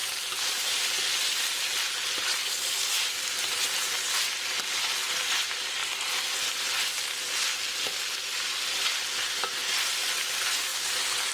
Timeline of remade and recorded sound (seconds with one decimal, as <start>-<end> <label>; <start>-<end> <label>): 0.0-4.6 remade; 4.6-5.8 recorded; 5.8-10.2 remade; 10.2-11.3 recorded

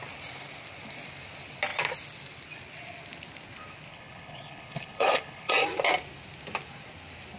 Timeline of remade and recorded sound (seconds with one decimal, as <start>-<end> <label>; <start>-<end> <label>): 0.0-3.9 recorded; 3.9-5.5 remade; 5.5-7.4 recorded

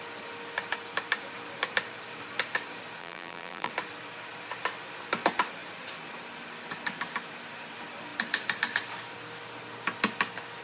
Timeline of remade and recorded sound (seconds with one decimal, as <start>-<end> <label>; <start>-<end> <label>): 0.0-3.0 recorded; 3.0-3.7 remade; 3.7-10.6 recorded

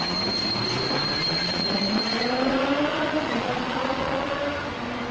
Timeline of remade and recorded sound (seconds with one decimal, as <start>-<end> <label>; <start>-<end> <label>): 0.0-1.3 recorded; 1.3-4.4 remade; 4.4-5.1 recorded

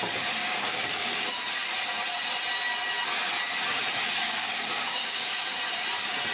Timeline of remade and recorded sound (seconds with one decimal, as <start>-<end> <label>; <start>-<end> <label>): 0.0-0.4 recorded; 0.4-1.2 remade; 1.2-4.2 recorded; 4.2-5.4 remade; 5.4-6.3 recorded

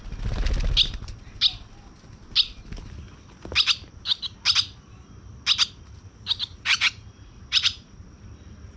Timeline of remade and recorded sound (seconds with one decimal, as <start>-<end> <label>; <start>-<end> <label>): 0.0-6.5 recorded; 6.5-8.0 remade; 8.0-8.8 recorded

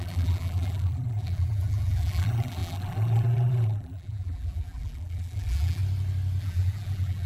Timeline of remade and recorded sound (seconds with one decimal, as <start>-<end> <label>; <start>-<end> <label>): 0.0-5.8 remade; 5.8-6.4 recorded; 6.4-7.3 remade